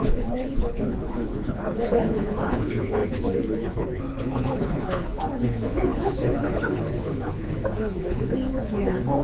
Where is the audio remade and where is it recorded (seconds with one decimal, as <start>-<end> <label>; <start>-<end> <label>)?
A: 0.0-9.2 remade